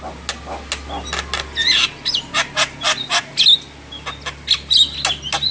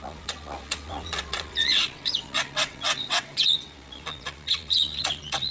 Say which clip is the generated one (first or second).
second